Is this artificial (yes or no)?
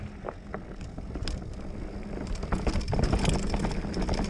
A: no